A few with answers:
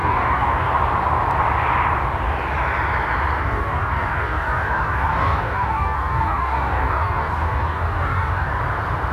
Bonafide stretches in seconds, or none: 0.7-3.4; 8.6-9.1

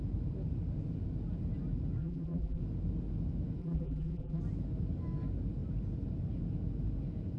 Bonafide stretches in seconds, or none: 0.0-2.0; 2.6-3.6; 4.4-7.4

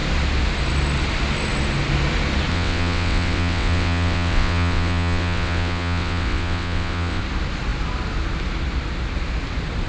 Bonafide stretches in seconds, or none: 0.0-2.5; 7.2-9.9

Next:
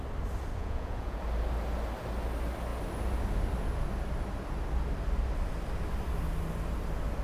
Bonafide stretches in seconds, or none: 0.0-0.5; 1.2-7.2